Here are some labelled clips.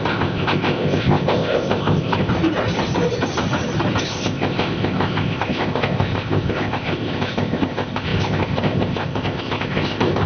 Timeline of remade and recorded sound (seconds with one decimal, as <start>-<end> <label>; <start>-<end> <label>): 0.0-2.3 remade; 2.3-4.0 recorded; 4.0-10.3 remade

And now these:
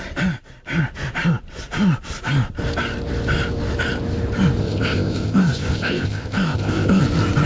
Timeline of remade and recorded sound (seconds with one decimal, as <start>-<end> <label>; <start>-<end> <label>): 0.0-4.6 recorded; 4.6-7.0 remade; 7.0-7.5 recorded

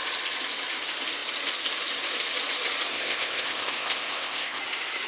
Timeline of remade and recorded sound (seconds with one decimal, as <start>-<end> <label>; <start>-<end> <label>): 0.0-2.9 recorded; 2.9-4.6 remade; 4.6-5.1 recorded

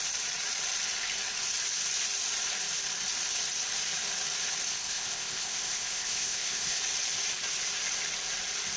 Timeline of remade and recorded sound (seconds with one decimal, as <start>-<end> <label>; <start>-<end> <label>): 0.0-4.7 recorded; 4.7-6.8 remade; 6.8-8.8 recorded